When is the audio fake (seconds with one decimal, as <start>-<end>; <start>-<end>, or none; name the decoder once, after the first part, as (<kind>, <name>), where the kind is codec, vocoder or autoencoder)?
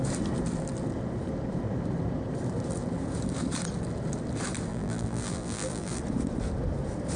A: 4.7-6.0 (vocoder, BigVGAN v2)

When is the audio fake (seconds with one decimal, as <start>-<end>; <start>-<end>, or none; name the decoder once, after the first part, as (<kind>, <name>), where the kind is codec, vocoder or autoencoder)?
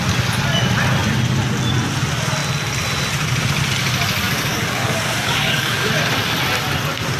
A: 4.5-5.9 (codec, DAC)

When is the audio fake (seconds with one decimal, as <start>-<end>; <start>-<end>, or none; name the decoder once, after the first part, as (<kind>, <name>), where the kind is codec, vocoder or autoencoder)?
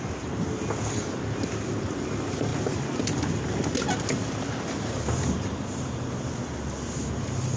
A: none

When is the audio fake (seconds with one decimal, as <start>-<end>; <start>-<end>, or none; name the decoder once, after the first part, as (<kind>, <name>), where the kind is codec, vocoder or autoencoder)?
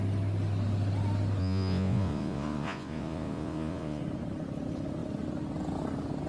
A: 1.4-4.0 (vocoder, Vocos)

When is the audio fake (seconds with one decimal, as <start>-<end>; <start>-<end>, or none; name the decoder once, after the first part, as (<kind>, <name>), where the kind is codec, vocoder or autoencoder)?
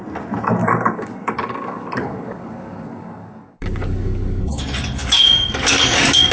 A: 0.6-4.4 (codec, DAC); 5.0-6.3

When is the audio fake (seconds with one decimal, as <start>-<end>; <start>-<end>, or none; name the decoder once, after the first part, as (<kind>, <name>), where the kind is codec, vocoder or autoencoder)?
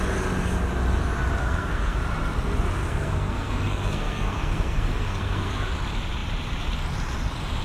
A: 1.4-2.0 (codec, SNAC); 2.8-5.7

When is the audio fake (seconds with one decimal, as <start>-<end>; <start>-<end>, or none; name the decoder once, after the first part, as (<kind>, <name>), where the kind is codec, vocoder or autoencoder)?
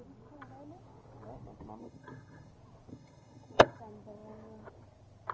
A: 1.8-2.5 (vocoder, HiFi-GAN); 2.9-3.8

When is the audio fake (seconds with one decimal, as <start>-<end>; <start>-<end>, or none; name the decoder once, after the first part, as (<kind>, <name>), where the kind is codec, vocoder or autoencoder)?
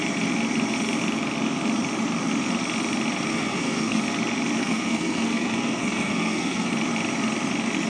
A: 3.3-4.0 (codec, SNAC); 4.6-6.7